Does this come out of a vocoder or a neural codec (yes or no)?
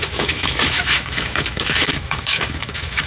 yes